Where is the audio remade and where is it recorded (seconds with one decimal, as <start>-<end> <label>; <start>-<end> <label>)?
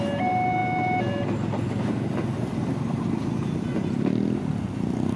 0.0-5.2 recorded